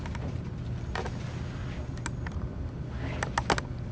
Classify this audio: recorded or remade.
recorded